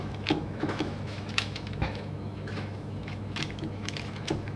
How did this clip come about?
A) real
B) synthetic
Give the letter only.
B